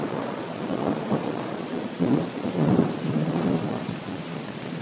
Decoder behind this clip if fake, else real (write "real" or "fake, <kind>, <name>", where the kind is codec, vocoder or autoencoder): fake, vocoder, Vocos